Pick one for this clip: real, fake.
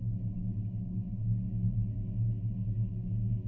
real